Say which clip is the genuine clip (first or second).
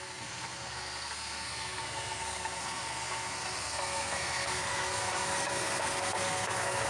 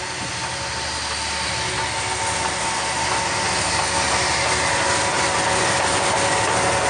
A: second